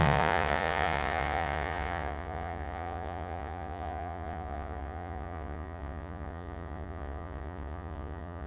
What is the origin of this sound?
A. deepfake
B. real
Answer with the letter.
A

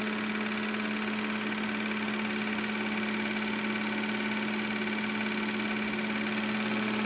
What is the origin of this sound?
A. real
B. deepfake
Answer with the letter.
A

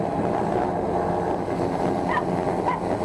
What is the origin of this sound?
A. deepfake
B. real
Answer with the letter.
B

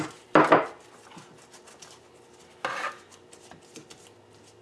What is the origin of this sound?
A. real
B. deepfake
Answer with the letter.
A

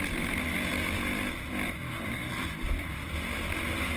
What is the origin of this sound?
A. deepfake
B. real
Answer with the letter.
B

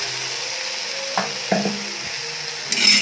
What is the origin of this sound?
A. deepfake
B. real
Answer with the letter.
B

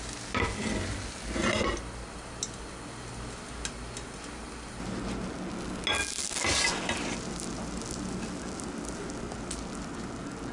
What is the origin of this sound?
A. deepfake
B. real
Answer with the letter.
B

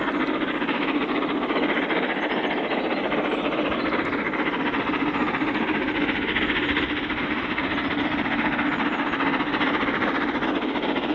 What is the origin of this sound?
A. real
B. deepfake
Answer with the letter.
A